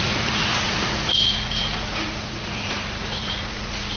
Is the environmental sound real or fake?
fake